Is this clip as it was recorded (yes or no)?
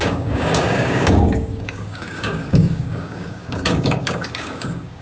no